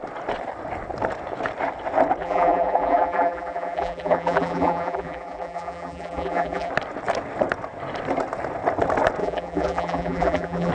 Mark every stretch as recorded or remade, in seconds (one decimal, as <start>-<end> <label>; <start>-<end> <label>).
0.0-2.2 recorded; 2.2-6.7 remade; 6.7-9.2 recorded; 9.2-10.7 remade